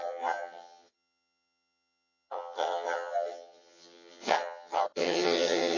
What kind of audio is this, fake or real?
fake